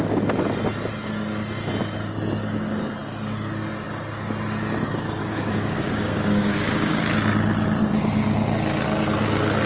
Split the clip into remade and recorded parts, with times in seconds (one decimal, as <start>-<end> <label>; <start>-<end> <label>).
0.0-5.2 recorded; 5.2-7.0 remade; 7.0-9.7 recorded

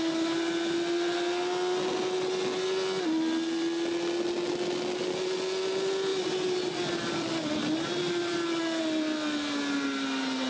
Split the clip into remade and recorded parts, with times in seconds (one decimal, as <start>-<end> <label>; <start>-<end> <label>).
0.0-10.5 recorded

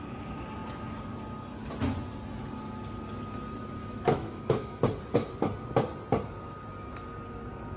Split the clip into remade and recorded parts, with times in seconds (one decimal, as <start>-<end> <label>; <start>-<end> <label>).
0.0-3.8 recorded; 3.8-4.8 remade; 4.8-7.8 recorded

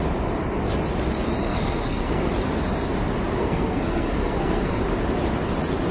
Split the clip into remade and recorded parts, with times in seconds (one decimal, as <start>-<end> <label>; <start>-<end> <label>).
0.0-1.4 recorded; 1.4-2.3 remade; 2.3-3.4 recorded; 3.4-4.8 remade; 4.8-5.9 recorded

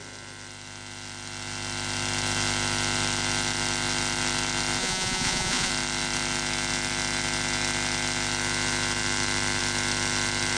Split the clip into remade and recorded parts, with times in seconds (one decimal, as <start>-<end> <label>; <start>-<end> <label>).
0.0-4.8 recorded; 4.8-5.7 remade; 5.7-10.6 recorded

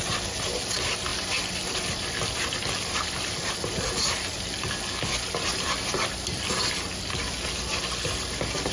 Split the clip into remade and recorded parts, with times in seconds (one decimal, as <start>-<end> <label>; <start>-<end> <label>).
0.0-8.7 recorded

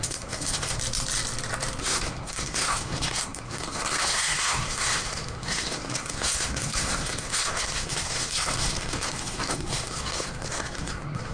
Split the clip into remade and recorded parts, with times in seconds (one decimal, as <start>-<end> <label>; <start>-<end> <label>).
0.0-0.8 remade; 0.8-1.8 recorded; 1.8-11.3 remade